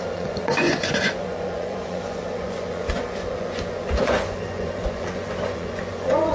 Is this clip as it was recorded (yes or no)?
no